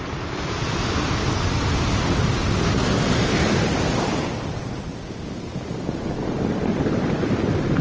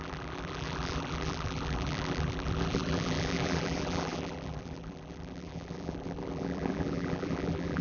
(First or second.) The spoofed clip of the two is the second